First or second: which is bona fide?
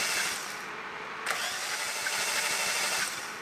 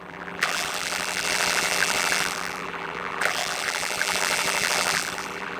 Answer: first